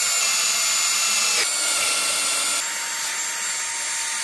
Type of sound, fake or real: real